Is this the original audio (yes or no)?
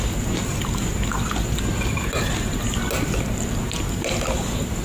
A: yes